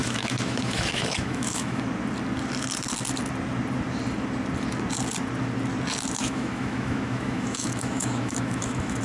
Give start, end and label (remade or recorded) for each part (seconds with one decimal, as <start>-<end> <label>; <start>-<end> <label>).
0.0-1.8 remade; 1.8-6.2 recorded; 6.2-9.0 remade

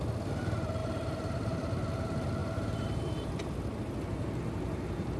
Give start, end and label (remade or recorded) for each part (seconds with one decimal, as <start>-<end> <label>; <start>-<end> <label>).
0.0-0.8 recorded; 0.8-1.7 remade; 1.7-2.4 recorded; 2.4-3.3 remade; 3.3-5.2 recorded

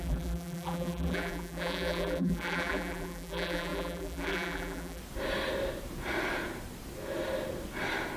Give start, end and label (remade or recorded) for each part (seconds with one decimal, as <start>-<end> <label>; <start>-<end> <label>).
0.0-5.0 remade; 5.0-8.2 recorded

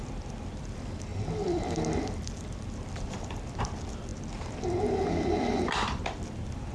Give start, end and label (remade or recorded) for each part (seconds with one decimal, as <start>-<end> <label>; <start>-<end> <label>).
0.0-4.1 remade; 4.1-4.8 recorded; 4.8-6.7 remade

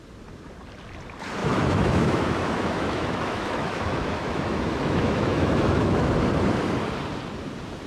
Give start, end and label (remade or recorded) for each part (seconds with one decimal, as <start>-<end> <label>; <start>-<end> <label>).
0.0-1.4 recorded; 1.4-6.1 remade; 6.1-7.9 recorded

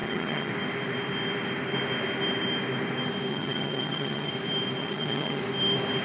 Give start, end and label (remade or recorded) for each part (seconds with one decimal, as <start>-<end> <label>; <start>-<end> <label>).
0.0-0.5 remade; 0.5-3.3 recorded; 3.3-4.3 remade; 4.3-4.8 recorded; 4.8-5.4 remade; 5.4-6.0 recorded

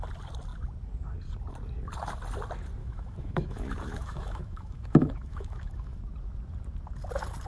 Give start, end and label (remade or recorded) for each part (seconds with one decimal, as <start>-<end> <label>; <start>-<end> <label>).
0.0-2.8 recorded; 2.8-6.0 remade; 6.0-7.5 recorded

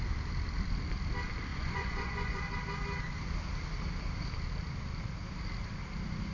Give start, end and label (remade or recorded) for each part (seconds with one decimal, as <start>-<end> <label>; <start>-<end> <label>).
0.0-1.5 recorded; 1.5-2.4 remade; 2.4-6.3 recorded